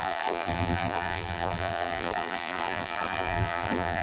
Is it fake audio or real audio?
fake